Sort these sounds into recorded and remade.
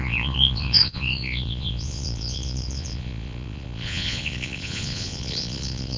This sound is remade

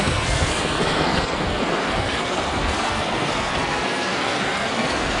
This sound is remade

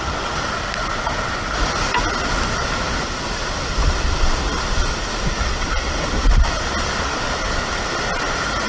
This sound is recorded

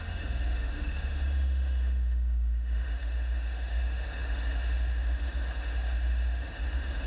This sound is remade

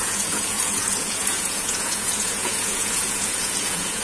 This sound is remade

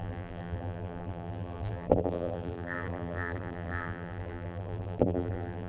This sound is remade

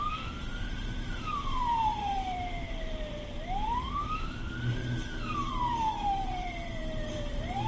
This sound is remade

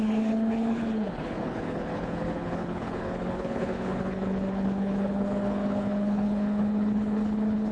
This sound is remade